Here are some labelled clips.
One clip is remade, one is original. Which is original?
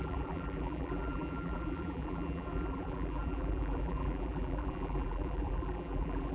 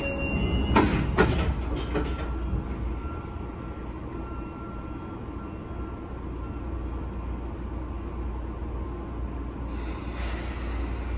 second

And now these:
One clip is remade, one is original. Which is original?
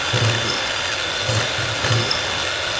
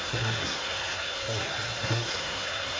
first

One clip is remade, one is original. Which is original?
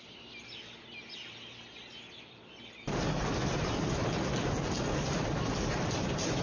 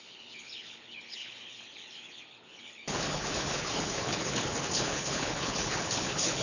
first